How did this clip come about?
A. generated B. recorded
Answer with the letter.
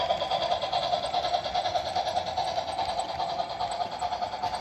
B